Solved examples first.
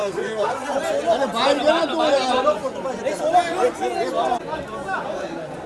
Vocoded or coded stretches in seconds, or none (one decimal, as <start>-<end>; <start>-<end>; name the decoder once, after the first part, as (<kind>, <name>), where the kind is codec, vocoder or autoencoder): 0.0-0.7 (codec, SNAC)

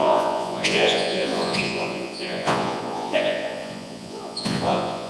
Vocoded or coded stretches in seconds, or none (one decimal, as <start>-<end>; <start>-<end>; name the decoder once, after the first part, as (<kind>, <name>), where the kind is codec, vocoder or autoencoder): 0.0-5.1 (vocoder, Vocos)

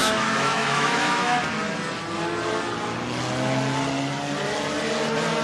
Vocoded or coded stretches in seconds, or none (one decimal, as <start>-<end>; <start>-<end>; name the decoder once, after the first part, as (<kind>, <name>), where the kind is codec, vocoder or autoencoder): 0.0-1.4 (autoencoder, DAC-VAE)

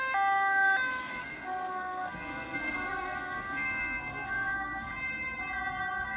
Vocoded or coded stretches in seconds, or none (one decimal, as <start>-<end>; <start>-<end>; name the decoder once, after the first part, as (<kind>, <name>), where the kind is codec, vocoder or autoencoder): 1.2-4.9 (codec, SNAC)

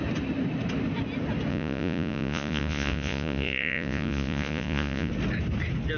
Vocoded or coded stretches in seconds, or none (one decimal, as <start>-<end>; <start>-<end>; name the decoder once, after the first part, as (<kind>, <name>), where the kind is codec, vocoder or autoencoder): 1.5-5.1 (vocoder, Vocos)

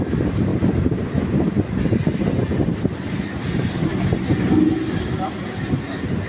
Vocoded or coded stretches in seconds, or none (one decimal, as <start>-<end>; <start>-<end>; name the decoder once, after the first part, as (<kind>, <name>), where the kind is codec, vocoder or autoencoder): 0.5-4.0 (vocoder, BigVGAN v2)

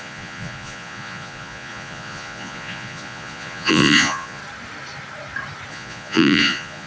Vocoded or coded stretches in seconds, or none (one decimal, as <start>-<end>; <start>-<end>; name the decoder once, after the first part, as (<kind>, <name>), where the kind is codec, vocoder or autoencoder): 0.0-4.4 (vocoder, Vocos); 5.7-6.9

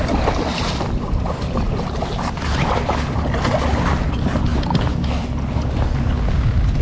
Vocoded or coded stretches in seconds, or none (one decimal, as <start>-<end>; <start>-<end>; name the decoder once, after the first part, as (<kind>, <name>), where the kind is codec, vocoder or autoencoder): none